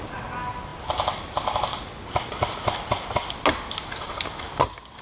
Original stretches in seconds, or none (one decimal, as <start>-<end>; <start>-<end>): 0.0-5.0